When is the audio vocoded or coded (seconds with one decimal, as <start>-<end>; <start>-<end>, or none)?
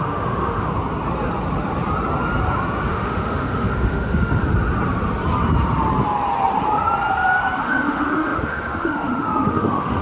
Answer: 0.0-0.7; 2.9-4.4; 7.6-10.0